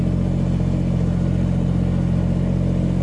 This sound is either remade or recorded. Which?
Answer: recorded